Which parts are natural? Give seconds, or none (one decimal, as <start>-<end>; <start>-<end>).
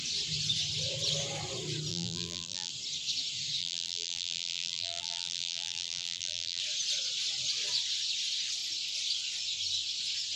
0.0-1.9; 2.7-3.6; 6.6-10.4